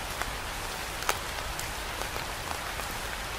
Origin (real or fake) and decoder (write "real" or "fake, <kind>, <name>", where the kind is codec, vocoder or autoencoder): real